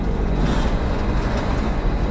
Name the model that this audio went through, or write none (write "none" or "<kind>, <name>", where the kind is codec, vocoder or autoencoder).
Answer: vocoder, Vocos